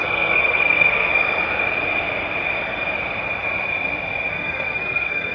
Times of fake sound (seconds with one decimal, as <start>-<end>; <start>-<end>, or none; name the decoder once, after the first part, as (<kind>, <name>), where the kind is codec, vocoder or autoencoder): 0.0-1.1 (codec, SNAC); 4.3-5.3